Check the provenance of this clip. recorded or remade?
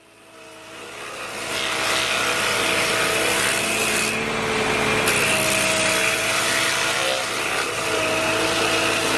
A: recorded